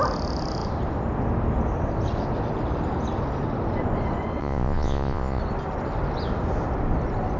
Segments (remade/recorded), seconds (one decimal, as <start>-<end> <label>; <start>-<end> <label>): 0.0-4.4 recorded; 4.4-5.4 remade; 5.4-7.4 recorded